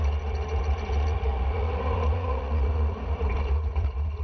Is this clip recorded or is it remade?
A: remade